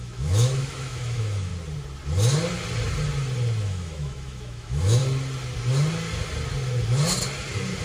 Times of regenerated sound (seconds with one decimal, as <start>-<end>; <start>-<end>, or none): 0.0-1.5; 3.6-5.0